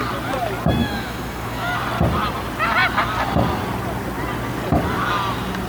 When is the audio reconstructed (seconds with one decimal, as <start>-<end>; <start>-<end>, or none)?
0.8-1.7

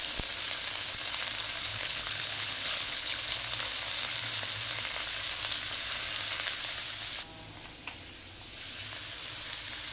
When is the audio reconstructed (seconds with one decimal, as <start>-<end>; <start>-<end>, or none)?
1.7-3.2

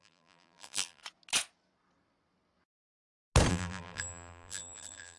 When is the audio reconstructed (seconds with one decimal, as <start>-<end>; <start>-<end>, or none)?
0.0-1.0; 3.5-5.2

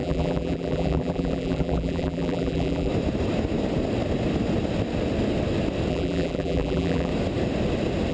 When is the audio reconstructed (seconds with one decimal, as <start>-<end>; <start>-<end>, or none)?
0.0-2.9; 5.9-7.1

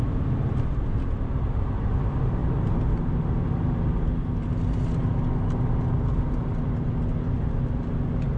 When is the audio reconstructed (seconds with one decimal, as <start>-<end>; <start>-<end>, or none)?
none